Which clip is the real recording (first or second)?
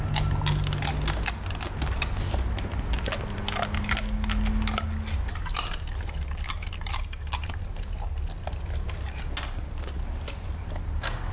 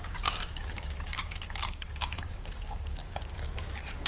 first